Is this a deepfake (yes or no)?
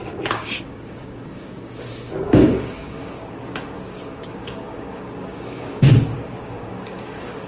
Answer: yes